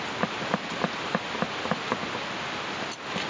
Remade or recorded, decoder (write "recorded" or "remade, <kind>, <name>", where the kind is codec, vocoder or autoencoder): recorded